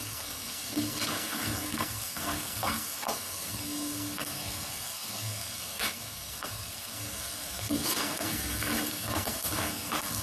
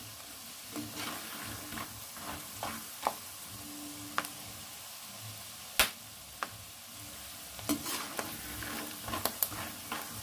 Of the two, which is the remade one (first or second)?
first